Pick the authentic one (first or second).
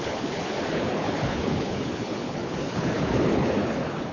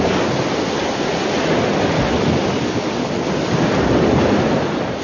second